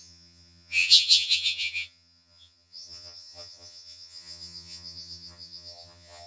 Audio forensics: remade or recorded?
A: remade